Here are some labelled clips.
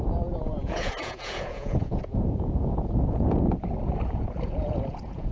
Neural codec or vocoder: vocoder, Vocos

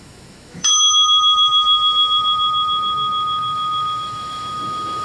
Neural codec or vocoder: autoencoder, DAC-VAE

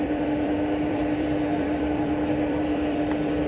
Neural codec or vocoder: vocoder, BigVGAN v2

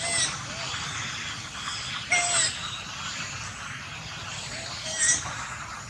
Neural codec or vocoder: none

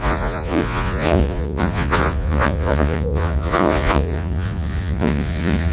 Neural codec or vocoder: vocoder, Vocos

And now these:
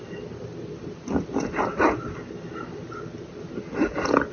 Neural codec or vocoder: none